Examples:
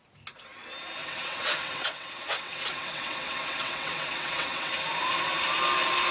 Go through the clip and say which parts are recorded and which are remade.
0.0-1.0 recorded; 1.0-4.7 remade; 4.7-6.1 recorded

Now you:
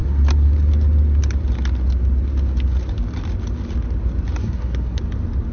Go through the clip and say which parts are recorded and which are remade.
0.0-4.4 recorded; 4.4-5.0 remade; 5.0-5.5 recorded

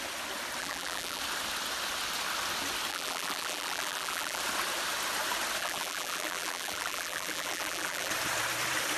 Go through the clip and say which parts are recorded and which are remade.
0.0-0.6 recorded; 0.6-1.2 remade; 1.2-2.9 recorded; 2.9-4.4 remade; 4.4-5.6 recorded; 5.6-8.1 remade; 8.1-9.0 recorded